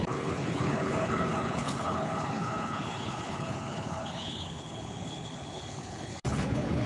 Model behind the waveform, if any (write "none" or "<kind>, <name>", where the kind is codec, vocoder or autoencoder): codec, HILCodec